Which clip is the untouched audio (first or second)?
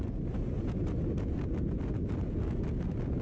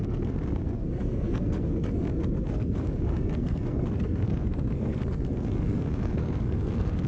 first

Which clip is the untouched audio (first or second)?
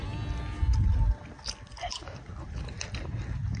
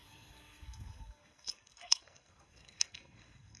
first